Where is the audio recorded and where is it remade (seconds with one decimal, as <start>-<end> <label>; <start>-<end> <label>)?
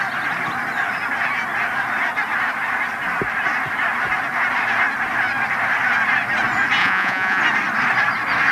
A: 0.0-6.8 recorded; 6.8-7.4 remade; 7.4-8.5 recorded